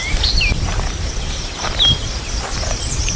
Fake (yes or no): yes